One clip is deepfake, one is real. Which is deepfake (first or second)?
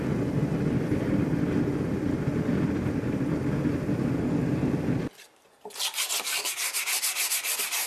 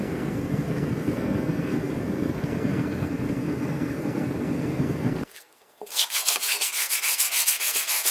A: second